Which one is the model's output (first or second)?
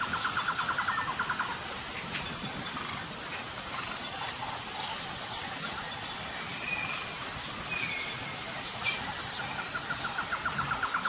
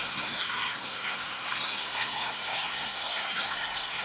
second